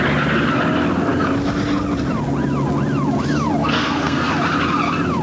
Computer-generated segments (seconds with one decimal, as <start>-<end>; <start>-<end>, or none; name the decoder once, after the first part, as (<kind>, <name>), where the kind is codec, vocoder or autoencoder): 3.6-4.3 (codec, SNAC)